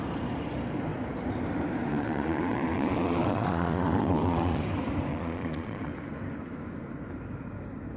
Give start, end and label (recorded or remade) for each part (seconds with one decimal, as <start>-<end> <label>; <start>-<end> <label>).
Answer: 0.0-1.9 recorded; 1.9-4.6 remade; 4.6-5.1 recorded; 5.1-5.9 remade; 5.9-8.0 recorded